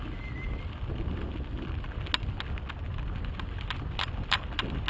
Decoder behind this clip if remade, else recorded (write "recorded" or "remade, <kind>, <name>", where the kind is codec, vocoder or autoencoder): recorded